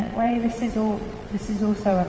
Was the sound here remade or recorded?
remade